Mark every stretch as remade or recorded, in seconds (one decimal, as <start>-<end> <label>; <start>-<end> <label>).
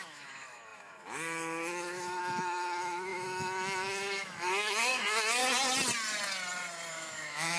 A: 0.0-5.4 remade; 5.4-6.9 recorded; 6.9-7.6 remade